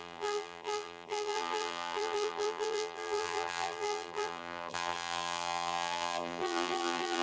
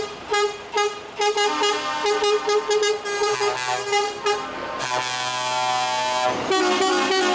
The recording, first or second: second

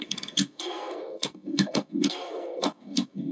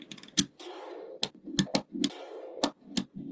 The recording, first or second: second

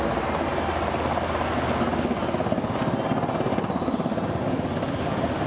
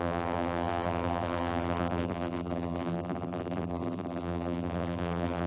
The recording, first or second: first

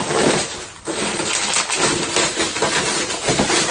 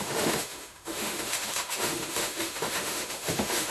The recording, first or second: first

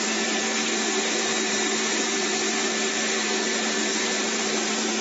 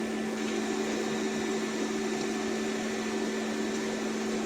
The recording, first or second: second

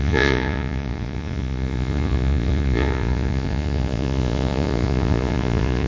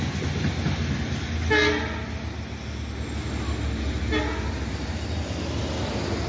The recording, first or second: second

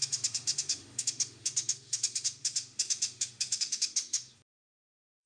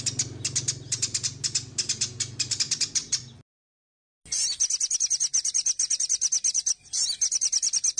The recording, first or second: second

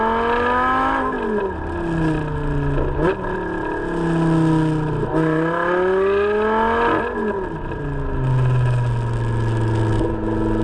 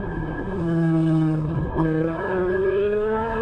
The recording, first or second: first